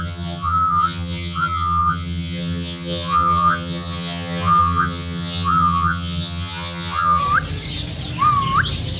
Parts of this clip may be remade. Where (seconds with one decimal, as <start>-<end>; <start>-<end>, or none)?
0.0-7.2

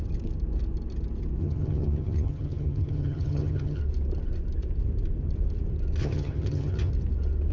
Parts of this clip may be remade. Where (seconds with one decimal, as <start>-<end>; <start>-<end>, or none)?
1.4-3.8; 6.0-6.9

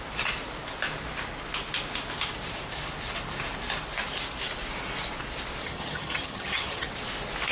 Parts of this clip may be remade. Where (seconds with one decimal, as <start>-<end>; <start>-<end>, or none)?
5.6-6.9

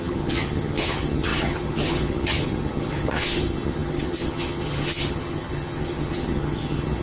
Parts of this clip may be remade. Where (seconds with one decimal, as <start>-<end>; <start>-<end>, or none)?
0.0-7.0

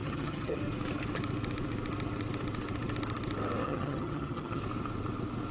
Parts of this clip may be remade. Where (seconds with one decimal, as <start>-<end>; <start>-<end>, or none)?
0.0-0.6; 3.6-4.6

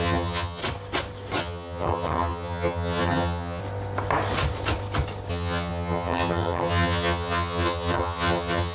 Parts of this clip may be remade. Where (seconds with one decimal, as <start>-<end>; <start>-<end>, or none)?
0.0-0.6; 1.4-3.6; 5.3-8.7

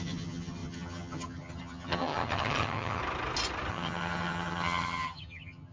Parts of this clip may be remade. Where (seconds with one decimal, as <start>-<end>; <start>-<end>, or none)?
0.0-3.0; 3.7-5.7

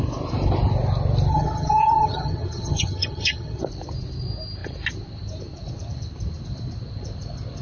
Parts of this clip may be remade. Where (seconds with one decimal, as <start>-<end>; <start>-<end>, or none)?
1.3-3.6